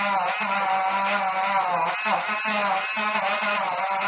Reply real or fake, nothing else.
real